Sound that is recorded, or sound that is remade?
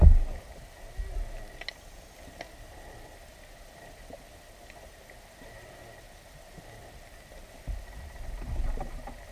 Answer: recorded